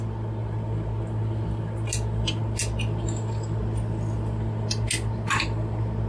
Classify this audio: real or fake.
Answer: real